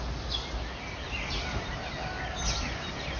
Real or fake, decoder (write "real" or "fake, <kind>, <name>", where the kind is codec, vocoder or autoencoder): real